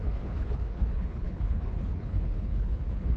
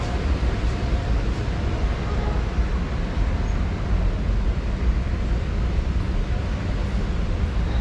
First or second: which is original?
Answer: second